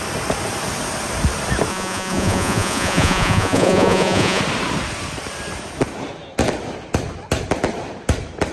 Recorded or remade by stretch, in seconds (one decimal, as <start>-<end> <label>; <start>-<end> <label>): 0.0-1.7 recorded; 1.7-4.4 remade; 4.4-8.5 recorded